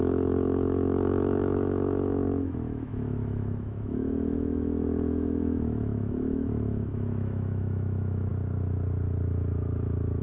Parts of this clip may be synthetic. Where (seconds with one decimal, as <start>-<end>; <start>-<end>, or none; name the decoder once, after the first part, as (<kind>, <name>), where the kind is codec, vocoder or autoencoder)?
0.0-8.3 (autoencoder, DAC-VAE)